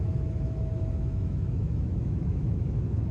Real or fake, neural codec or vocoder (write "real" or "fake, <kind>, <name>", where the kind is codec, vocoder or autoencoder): fake, autoencoder, DAC-VAE